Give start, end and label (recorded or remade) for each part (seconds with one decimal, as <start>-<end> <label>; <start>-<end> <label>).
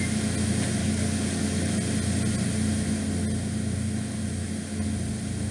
0.0-0.8 recorded; 0.8-1.7 remade; 1.7-5.5 recorded